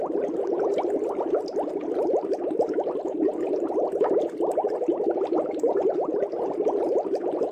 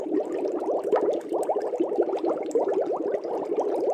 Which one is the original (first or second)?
first